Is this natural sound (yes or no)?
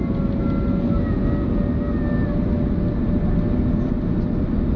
yes